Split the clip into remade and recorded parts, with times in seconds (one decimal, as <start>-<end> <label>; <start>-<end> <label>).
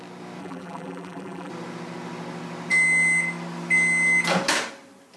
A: 0.0-0.4 recorded; 0.4-1.5 remade; 1.5-5.2 recorded